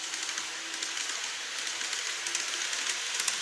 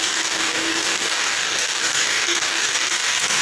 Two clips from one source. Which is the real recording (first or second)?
first